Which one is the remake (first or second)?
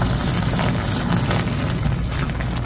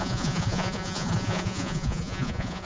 second